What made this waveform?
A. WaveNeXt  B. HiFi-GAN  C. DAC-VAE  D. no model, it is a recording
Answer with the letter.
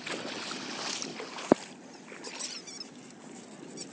D